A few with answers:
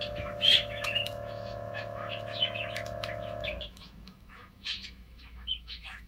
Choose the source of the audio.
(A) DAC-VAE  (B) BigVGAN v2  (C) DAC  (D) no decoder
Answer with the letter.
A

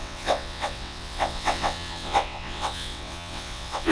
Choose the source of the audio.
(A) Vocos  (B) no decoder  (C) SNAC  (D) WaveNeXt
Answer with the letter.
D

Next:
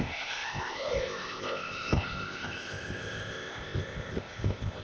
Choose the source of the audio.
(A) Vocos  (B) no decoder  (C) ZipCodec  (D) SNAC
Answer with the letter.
C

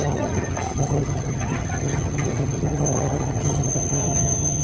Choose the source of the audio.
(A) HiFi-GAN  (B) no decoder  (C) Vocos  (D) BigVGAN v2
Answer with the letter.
A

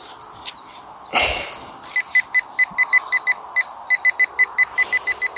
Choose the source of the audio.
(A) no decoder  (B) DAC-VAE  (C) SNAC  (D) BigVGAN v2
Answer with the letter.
A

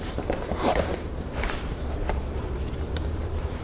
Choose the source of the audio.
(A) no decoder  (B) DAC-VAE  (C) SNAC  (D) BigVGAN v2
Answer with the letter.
D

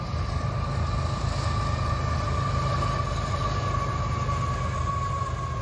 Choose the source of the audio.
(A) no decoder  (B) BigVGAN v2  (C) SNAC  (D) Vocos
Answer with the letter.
A